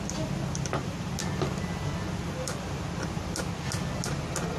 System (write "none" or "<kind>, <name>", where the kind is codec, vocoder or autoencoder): none